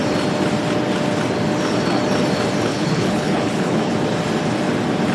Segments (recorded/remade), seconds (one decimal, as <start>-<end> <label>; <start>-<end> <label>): 0.0-2.7 recorded; 2.7-3.9 remade; 3.9-5.1 recorded